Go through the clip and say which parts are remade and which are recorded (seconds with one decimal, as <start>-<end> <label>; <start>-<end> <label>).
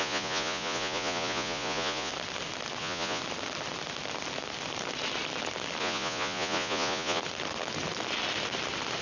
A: 0.0-2.1 remade; 2.1-2.8 recorded; 2.8-3.2 remade; 3.2-5.8 recorded; 5.8-7.2 remade; 7.2-9.0 recorded